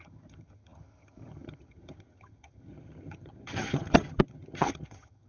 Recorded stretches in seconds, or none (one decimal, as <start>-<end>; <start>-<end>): none